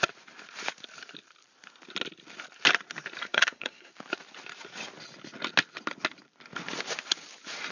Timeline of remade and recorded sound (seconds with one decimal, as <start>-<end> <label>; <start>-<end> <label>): 0.0-3.2 recorded; 3.2-3.9 remade; 3.9-7.7 recorded